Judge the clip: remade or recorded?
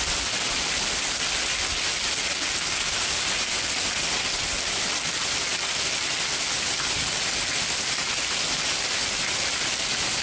recorded